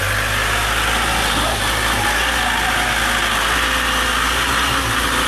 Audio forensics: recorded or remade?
recorded